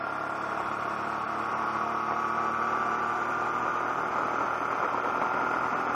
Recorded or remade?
recorded